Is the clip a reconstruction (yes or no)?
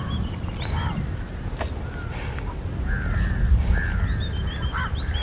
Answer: no